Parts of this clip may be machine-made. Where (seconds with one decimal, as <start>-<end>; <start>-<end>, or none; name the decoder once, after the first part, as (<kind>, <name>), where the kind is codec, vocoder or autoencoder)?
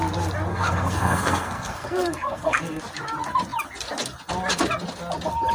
0.5-2.8 (codec, SNAC)